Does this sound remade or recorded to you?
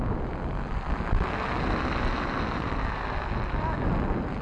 recorded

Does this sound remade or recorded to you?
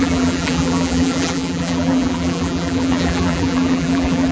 remade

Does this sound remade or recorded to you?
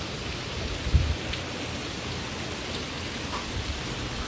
recorded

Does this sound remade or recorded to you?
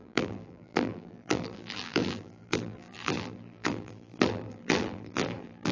remade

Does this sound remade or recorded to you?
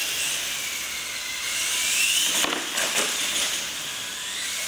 recorded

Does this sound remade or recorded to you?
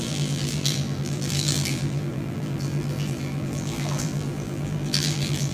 remade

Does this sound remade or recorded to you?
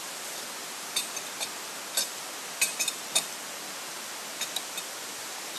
recorded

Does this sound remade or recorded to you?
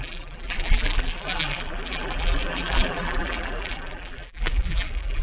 remade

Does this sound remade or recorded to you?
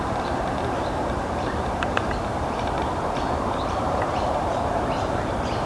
remade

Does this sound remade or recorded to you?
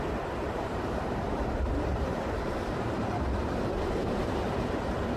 remade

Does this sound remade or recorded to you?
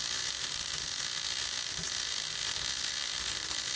recorded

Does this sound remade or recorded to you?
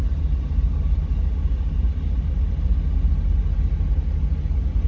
recorded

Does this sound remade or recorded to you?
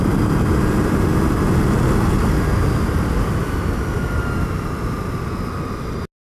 recorded